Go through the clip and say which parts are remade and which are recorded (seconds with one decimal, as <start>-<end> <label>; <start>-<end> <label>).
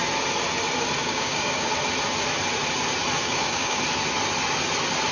0.0-1.0 recorded; 1.0-1.7 remade; 1.7-3.2 recorded; 3.2-3.8 remade; 3.8-5.1 recorded